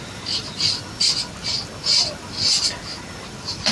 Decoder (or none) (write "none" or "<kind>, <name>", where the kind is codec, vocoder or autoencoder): none